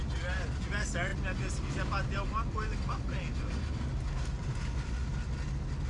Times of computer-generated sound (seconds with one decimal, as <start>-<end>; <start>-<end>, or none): none